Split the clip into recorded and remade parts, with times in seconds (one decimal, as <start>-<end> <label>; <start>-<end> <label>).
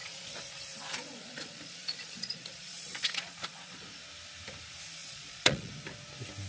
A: 0.0-3.9 remade; 3.9-5.0 recorded; 5.0-5.7 remade; 5.7-6.5 recorded